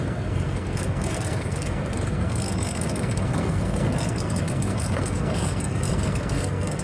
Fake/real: fake